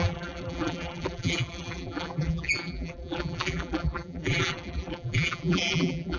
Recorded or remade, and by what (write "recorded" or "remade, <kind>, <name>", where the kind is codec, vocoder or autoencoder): remade, vocoder, BigVGAN v2